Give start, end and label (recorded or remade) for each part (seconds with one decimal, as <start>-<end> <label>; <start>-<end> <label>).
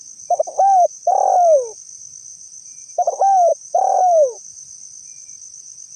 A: 0.0-2.3 recorded; 2.3-3.1 remade; 3.1-3.5 recorded; 3.5-4.4 remade; 4.4-6.0 recorded